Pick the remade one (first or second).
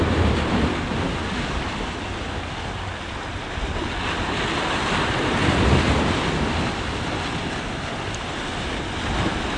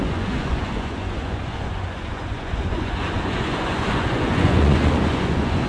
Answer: second